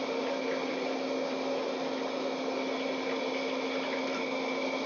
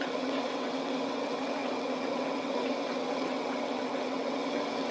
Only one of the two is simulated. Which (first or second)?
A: second